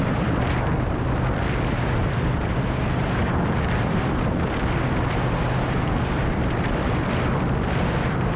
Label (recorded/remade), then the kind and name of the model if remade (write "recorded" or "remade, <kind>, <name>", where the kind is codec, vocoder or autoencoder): remade, vocoder, BigVGAN v2